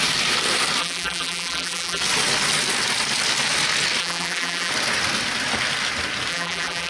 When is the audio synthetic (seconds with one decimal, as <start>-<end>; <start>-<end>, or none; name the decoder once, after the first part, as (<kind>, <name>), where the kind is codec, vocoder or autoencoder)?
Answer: 0.8-2.0 (vocoder, BigVGAN v2); 4.0-4.7; 6.3-6.9